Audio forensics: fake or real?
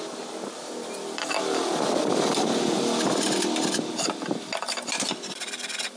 real